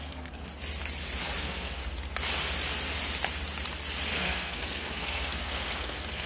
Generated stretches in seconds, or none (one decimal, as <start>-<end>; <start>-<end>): 0.0-0.4; 1.4-1.8; 4.1-6.3